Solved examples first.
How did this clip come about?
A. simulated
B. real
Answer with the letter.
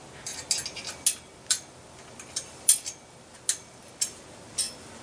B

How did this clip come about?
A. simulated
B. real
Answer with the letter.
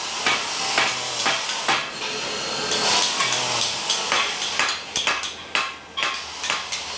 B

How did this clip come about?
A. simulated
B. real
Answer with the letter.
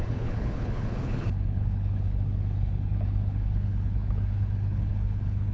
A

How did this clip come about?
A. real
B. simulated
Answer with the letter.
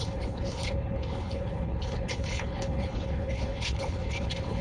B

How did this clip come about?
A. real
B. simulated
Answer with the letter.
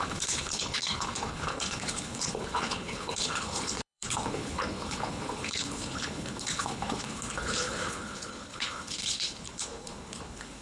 B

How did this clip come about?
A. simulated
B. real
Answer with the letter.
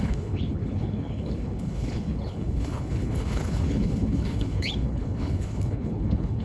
A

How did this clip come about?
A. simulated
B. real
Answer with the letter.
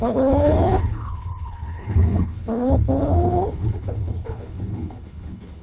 A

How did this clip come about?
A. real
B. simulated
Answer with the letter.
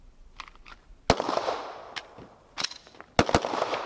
A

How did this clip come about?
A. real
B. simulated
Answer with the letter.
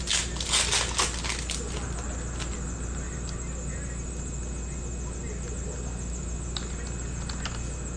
A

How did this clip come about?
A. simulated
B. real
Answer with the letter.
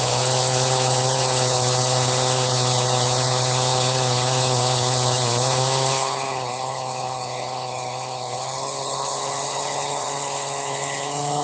A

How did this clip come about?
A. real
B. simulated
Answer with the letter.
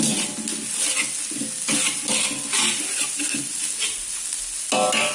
A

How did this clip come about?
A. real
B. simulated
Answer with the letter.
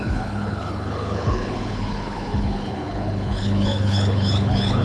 B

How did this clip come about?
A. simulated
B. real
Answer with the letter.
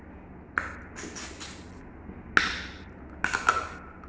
B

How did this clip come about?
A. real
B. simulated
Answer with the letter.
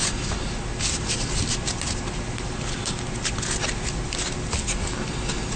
A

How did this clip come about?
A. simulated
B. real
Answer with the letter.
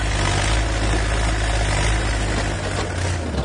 B